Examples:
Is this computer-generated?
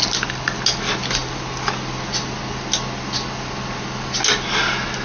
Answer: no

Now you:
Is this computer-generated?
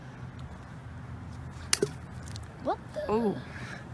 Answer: no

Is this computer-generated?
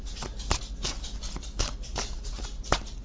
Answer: no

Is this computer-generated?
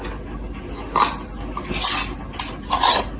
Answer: no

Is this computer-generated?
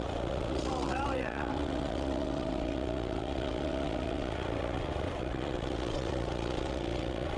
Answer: yes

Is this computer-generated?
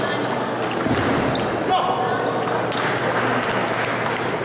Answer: no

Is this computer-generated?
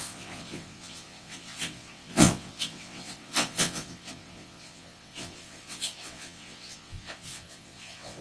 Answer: yes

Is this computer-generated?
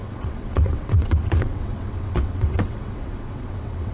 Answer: yes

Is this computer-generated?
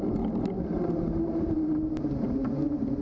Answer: no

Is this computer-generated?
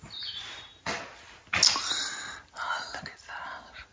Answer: no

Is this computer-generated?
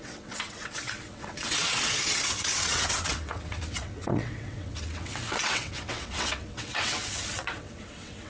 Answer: yes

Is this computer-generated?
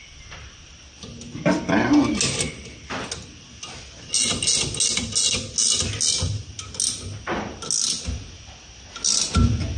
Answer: no